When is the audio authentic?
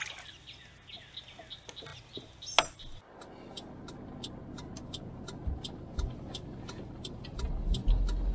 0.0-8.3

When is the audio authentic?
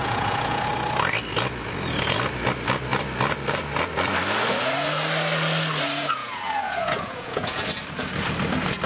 0.7-6.2; 7.6-8.9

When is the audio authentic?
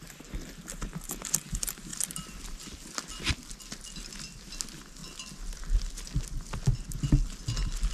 0.0-7.9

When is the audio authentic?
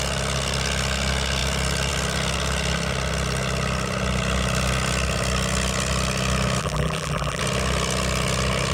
0.0-6.6; 7.4-8.7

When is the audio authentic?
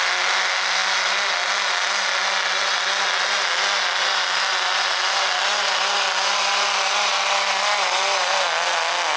0.0-9.2